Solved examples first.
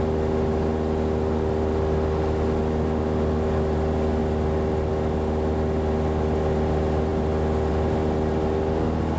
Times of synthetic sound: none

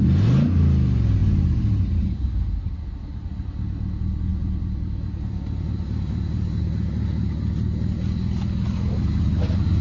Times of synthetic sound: none

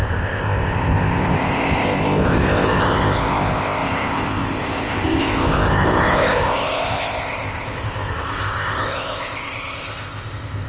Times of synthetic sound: 0.0-10.7 (codec, ZipCodec)

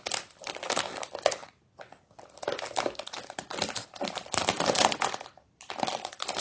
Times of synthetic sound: none

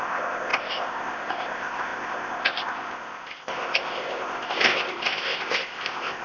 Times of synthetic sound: 0.0-6.2 (codec, ZipCodec)